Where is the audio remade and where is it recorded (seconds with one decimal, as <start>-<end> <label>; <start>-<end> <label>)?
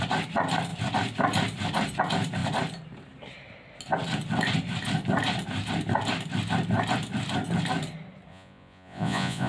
0.0-8.3 recorded; 8.3-9.5 remade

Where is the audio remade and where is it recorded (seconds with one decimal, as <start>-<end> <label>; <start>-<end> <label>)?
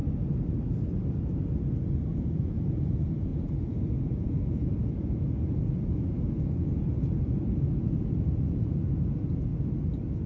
0.0-2.2 recorded; 2.2-9.5 remade; 9.5-10.3 recorded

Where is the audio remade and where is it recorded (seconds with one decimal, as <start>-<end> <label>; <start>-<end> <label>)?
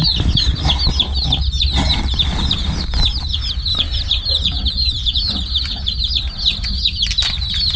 0.0-4.3 recorded; 4.3-5.3 remade; 5.3-7.8 recorded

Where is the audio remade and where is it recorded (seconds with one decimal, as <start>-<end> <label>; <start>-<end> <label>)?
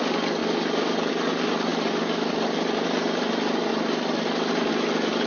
0.0-5.3 recorded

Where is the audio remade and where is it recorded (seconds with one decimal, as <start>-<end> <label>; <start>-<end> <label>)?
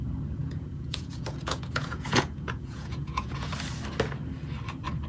0.0-0.4 recorded; 0.4-3.5 remade; 3.5-5.1 recorded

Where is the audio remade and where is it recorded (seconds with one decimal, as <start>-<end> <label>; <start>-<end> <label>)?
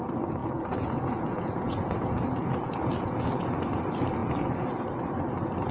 0.0-0.4 recorded; 0.4-3.8 remade; 3.8-4.2 recorded; 4.2-4.7 remade; 4.7-5.7 recorded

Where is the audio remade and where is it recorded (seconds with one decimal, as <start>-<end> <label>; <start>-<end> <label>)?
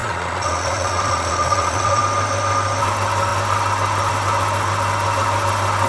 0.0-2.0 remade; 2.0-5.9 recorded